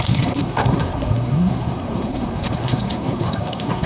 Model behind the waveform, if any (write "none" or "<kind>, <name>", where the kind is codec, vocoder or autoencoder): codec, SNAC